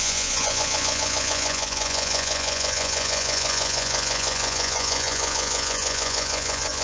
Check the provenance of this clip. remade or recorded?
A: remade